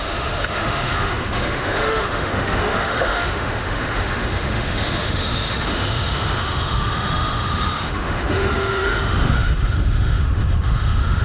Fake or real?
fake